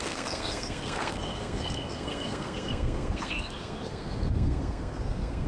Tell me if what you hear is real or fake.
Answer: fake